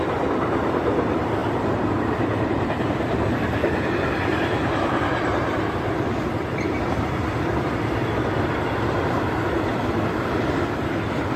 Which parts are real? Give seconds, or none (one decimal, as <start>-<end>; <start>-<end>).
none

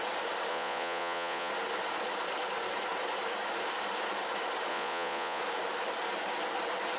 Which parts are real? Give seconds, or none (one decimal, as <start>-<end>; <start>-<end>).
0.0-0.5; 1.5-4.7; 5.4-7.0

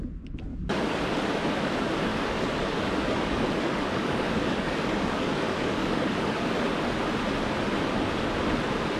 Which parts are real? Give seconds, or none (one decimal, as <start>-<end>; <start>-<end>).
0.0-0.5; 1.3-2.1; 6.6-9.0

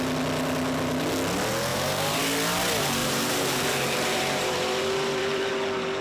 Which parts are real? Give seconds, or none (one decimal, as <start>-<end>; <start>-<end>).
0.0-1.7; 2.2-3.0; 5.5-6.0

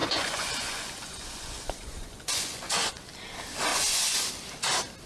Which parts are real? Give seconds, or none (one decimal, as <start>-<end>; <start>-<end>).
2.9-3.7; 4.3-5.1

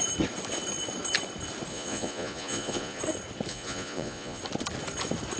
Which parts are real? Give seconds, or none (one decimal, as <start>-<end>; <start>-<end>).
0.0-1.7; 3.0-3.5; 4.4-5.4